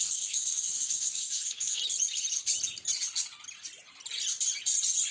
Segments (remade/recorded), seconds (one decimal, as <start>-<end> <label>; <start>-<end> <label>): 0.0-1.8 remade; 1.8-5.1 recorded